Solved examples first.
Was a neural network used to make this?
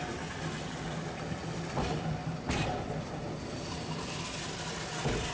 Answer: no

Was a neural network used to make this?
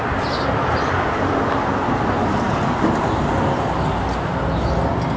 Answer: no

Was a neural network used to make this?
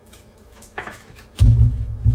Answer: yes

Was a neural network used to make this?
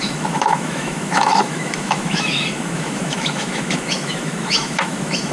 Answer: yes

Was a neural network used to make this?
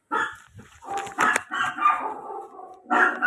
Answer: no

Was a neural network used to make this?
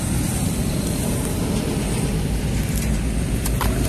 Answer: no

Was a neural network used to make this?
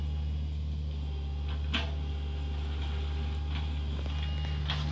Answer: no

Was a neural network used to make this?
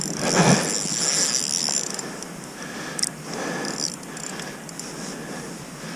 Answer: no